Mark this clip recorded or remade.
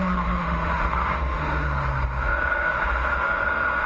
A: remade